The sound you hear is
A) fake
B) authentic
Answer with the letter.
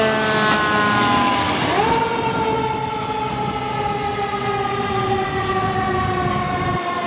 B